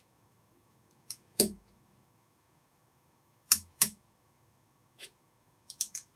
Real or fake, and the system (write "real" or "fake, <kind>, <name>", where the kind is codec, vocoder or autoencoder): fake, autoencoder, DAC-VAE